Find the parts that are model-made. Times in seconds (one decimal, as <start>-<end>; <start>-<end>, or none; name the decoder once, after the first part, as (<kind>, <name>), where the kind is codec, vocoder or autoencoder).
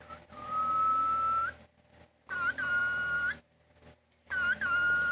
none